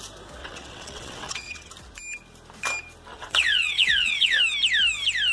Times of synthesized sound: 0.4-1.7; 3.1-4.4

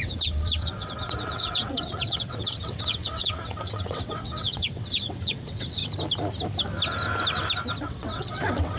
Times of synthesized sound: 0.0-5.8; 7.8-8.8

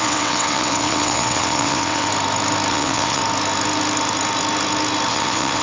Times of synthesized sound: 0.0-2.1; 2.7-3.2; 5.1-5.6

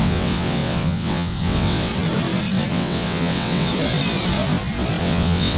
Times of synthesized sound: 0.0-1.9; 2.7-3.7; 5.0-5.6